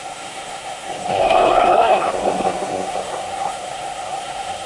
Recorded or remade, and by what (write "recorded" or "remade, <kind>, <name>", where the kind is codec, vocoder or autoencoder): remade, codec, SNAC